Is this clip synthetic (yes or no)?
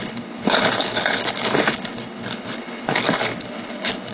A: yes